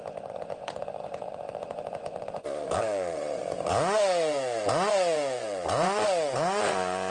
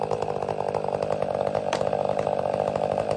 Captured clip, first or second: second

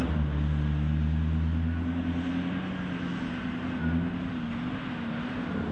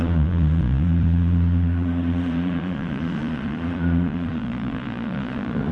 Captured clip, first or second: first